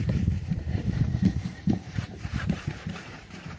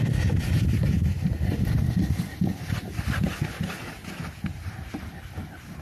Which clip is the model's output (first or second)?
first